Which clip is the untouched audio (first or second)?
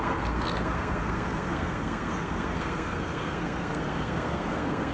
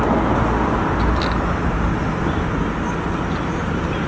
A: second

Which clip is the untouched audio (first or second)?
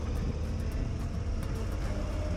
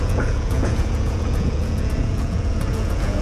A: first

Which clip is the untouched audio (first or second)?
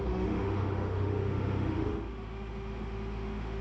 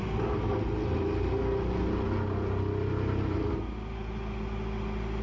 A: second